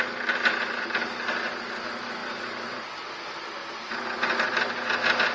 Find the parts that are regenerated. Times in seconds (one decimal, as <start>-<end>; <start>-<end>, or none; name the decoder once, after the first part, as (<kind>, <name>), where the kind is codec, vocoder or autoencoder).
2.2-2.8 (vocoder, BigVGAN v2); 3.6-4.5